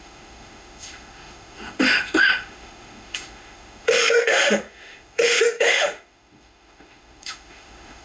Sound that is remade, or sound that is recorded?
remade